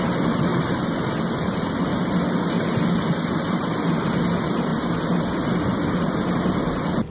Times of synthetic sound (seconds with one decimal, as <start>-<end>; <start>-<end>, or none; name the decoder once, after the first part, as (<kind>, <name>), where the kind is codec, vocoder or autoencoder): none